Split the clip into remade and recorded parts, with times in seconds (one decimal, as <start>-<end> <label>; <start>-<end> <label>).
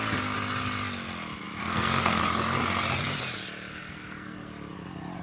0.0-1.6 recorded; 1.6-2.2 remade; 2.2-3.7 recorded; 3.7-4.5 remade; 4.5-5.2 recorded